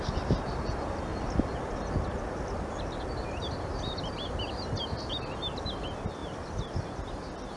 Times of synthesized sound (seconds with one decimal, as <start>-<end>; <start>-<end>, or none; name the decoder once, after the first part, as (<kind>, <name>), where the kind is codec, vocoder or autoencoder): 1.1-4.1 (vocoder, BigVGAN v2); 6.2-7.6